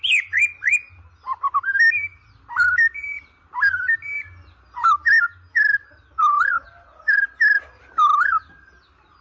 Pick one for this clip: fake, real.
real